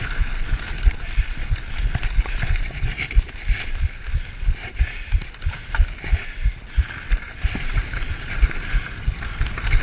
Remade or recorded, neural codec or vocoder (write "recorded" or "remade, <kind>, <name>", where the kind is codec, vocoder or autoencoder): remade, vocoder, BigVGAN v2